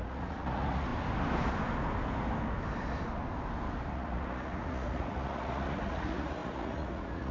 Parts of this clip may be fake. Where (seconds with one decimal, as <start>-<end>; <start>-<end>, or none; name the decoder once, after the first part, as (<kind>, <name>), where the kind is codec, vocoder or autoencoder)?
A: 0.0-0.9 (vocoder, Vocos); 3.9-7.3